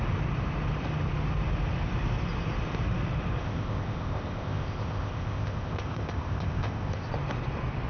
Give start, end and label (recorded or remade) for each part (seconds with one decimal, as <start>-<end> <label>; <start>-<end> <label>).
0.0-3.4 recorded; 3.4-7.1 remade; 7.1-7.9 recorded